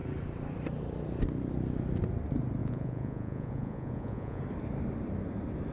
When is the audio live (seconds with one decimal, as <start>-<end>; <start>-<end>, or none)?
0.0-2.6; 4.4-5.7